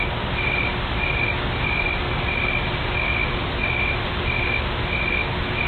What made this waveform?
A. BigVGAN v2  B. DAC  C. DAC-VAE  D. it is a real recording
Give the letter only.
D